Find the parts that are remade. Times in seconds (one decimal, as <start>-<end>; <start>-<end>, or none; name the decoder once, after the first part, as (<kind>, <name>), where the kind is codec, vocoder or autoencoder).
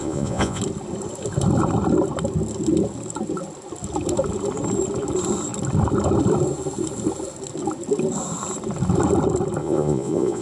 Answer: 0.0-0.6 (vocoder, Vocos); 9.6-10.4